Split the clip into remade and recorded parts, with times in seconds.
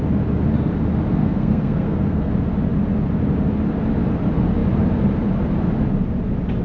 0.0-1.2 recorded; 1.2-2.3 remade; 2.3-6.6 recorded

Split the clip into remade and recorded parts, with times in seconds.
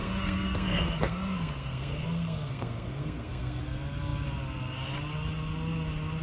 0.0-3.6 remade; 3.6-6.2 recorded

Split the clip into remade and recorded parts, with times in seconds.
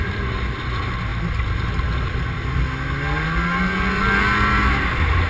0.0-5.3 recorded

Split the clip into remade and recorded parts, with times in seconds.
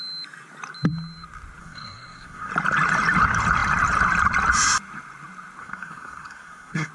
0.0-1.6 recorded; 1.6-2.5 remade; 2.5-5.6 recorded; 5.6-6.9 remade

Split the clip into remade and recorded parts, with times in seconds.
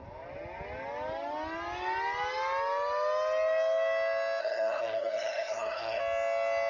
0.0-4.4 recorded; 4.4-6.0 remade; 6.0-6.7 recorded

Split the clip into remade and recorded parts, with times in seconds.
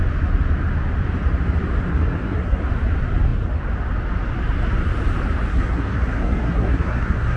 0.0-1.9 recorded; 1.9-2.6 remade; 2.6-5.5 recorded; 5.5-7.4 remade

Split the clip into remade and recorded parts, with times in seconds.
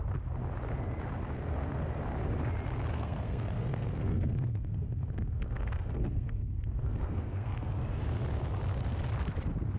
0.0-2.9 recorded; 2.9-7.7 remade; 7.7-9.8 recorded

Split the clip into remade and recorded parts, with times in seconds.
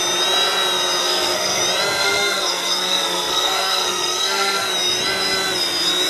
0.0-1.0 recorded; 1.0-1.6 remade; 1.6-2.0 recorded; 2.0-4.7 remade; 4.7-6.1 recorded